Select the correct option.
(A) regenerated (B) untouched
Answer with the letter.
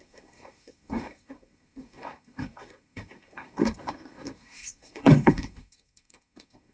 A